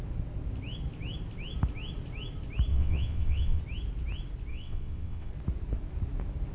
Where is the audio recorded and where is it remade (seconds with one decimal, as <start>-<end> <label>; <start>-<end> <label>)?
0.0-2.7 recorded; 2.7-3.6 remade; 3.6-4.5 recorded; 4.5-5.3 remade; 5.3-6.5 recorded